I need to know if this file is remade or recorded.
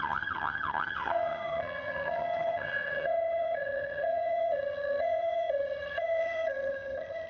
remade